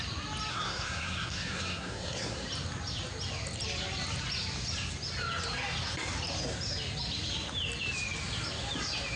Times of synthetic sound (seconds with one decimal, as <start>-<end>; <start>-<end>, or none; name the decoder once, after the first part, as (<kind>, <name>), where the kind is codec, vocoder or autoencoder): 0.5-2.5 (codec, SNAC)